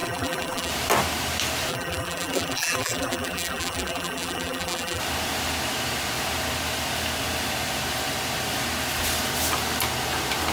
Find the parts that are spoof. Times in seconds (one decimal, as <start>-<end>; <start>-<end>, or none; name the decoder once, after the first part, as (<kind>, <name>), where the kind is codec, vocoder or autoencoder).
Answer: 0.0-0.7 (vocoder, BigVGAN v2); 1.7-5.0